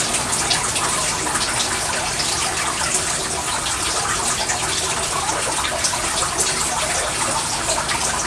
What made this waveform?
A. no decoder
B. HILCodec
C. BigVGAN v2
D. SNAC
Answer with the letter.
A